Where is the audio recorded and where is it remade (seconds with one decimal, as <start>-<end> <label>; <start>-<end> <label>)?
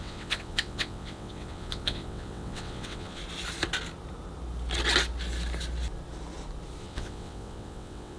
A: 0.0-3.2 remade; 3.2-6.8 recorded; 6.8-8.2 remade